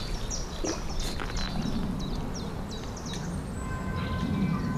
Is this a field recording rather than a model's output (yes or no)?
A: yes